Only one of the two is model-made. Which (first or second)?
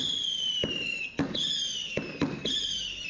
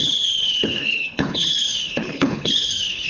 second